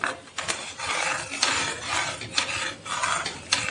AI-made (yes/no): no